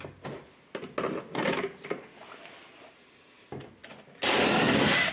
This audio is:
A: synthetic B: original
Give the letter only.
B